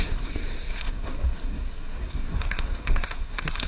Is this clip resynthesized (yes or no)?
yes